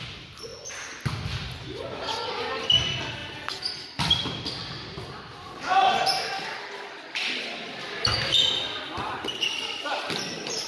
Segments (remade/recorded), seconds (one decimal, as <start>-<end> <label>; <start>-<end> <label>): 0.0-10.7 recorded